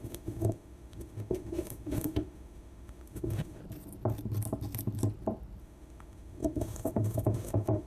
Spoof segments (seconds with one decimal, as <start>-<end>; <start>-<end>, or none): 0.0-3.6; 5.6-7.9